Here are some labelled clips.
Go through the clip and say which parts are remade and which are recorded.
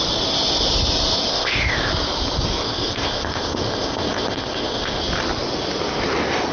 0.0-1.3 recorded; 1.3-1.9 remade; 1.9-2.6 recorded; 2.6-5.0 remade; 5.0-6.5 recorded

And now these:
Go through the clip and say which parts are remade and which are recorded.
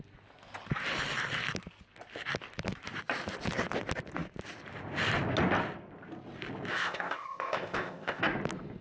0.0-6.7 recorded; 6.7-8.2 remade; 8.2-8.8 recorded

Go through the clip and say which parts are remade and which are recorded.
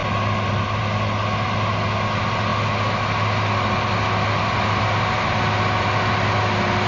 0.0-6.9 recorded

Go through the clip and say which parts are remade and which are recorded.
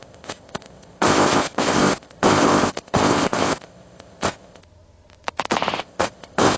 0.0-4.6 remade; 4.6-5.8 recorded; 5.8-6.6 remade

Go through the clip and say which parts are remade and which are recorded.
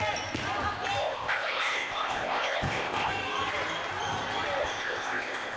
0.0-1.0 recorded; 1.0-3.1 remade; 3.1-4.6 recorded; 4.6-5.6 remade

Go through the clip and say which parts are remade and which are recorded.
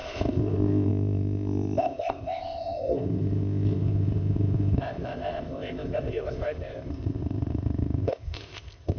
0.0-9.0 remade